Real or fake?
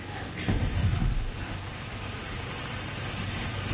real